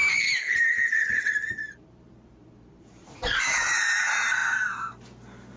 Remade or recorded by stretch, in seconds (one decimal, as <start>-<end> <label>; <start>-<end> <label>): 0.0-3.4 remade; 3.4-4.4 recorded; 4.4-4.9 remade; 4.9-5.6 recorded